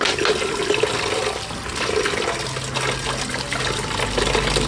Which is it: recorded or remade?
recorded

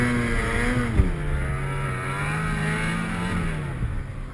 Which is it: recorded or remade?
recorded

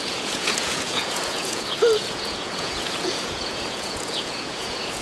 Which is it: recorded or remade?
remade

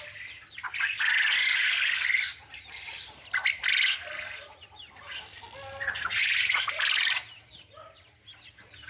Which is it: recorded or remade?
recorded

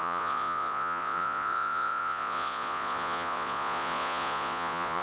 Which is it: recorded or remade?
remade